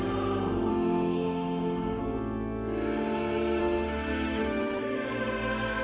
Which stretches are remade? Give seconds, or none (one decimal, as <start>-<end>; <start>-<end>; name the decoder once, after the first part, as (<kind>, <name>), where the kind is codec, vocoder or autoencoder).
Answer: 0.7-2.0 (autoencoder, DAC-VAE); 3.6-4.8